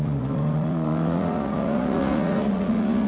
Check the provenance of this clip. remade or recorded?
remade